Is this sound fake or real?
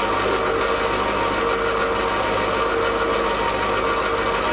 real